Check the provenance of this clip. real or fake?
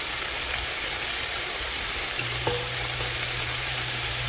fake